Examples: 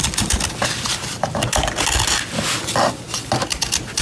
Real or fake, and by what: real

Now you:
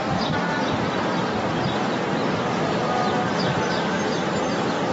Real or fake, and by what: real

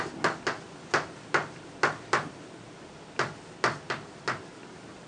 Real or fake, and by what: real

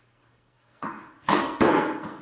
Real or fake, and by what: fake, codec, SNAC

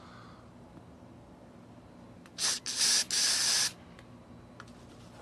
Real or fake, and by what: real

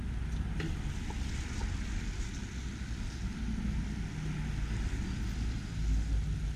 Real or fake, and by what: real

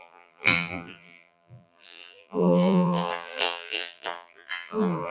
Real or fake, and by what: fake, vocoder, BigVGAN v2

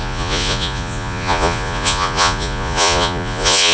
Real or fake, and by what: fake, vocoder, Vocos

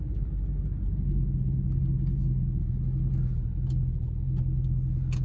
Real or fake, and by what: real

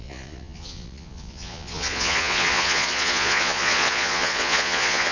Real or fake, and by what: fake, vocoder, Vocos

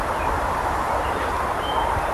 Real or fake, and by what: real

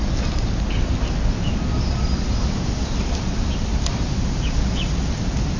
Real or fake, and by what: real